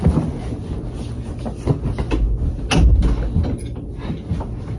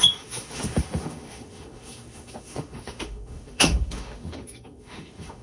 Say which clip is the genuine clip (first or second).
first